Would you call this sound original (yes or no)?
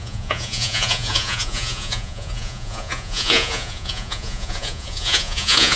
no